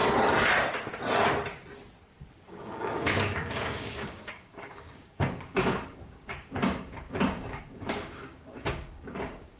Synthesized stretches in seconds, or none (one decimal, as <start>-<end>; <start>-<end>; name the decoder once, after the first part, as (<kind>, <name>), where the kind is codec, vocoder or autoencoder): 2.4-9.6 (codec, DAC)